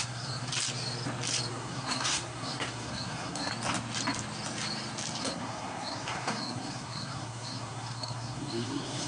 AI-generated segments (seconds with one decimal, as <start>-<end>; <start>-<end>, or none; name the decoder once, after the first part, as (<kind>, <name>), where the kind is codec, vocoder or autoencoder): 0.0-0.5 (codec, SNAC); 1.5-3.5; 5.2-9.1